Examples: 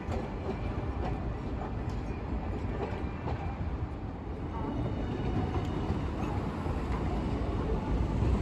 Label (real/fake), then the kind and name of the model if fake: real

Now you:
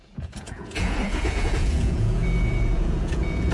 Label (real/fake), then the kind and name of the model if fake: fake, vocoder, Vocos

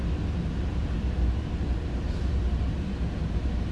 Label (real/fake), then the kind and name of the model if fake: real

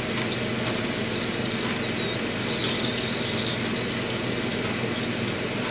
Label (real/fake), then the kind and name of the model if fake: real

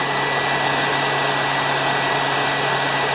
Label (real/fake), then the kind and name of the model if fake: real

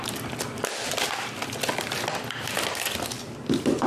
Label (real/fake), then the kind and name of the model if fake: fake, vocoder, BigVGAN v2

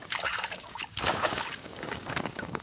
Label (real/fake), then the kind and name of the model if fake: fake, codec, DAC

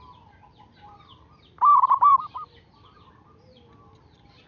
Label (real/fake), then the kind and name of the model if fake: fake, vocoder, BigVGAN v2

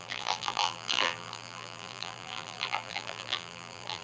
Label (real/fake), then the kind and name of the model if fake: fake, vocoder, BigVGAN v2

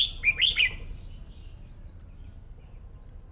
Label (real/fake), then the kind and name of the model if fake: real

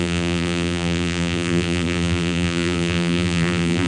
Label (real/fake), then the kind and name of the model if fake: fake, vocoder, BigVGAN v2